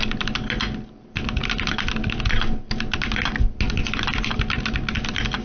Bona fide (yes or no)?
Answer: yes